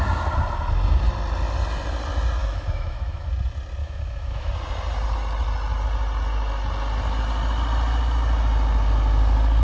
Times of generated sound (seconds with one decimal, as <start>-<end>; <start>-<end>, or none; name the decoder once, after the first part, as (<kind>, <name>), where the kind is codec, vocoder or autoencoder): 2.4-3.3 (autoencoder, DAC-VAE); 3.8-4.5